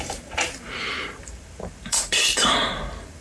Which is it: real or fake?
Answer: fake